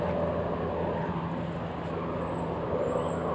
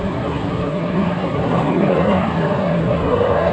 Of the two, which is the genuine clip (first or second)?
first